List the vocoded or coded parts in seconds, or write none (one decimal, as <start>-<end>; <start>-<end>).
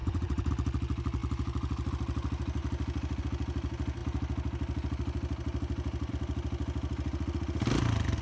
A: 0.0-0.5